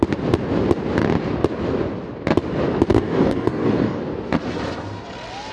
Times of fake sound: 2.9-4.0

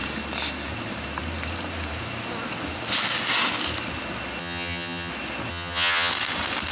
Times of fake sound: 4.4-5.1; 5.5-6.1